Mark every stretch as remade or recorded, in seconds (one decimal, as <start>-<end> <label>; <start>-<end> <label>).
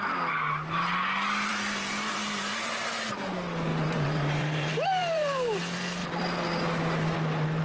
0.0-1.5 recorded; 1.5-3.1 remade; 3.1-3.7 recorded; 3.7-5.6 remade; 5.6-7.6 recorded